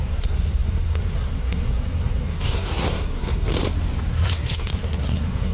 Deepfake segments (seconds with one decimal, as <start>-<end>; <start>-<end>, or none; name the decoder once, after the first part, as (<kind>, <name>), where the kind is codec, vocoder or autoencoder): 0.0-3.5 (codec, SNAC); 4.1-5.5

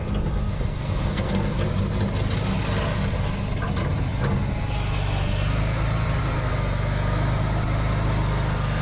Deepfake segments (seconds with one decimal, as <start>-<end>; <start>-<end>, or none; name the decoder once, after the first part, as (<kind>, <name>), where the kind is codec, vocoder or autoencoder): 0.5-1.5 (codec, SNAC)

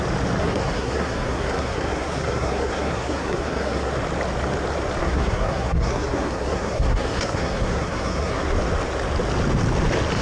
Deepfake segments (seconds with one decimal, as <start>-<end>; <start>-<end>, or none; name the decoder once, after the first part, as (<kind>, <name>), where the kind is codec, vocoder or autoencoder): 0.4-3.9 (codec, SNAC); 5.0-8.4

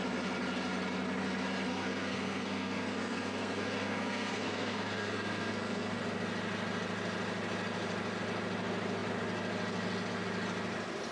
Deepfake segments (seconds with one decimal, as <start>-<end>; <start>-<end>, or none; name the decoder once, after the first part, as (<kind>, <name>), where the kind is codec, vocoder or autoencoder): 1.7-6.0 (codec, SNAC)

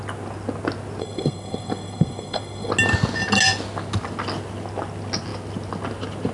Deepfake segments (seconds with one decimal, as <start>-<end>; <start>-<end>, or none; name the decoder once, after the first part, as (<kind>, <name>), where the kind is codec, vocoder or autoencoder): 1.0-2.7 (codec, SNAC)